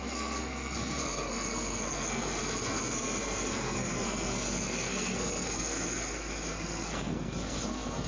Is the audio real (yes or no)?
no